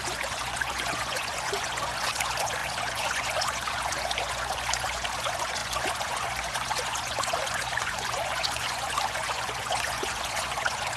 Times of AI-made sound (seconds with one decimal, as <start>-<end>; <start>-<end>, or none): 0.0-11.0